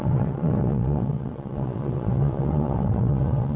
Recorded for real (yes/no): no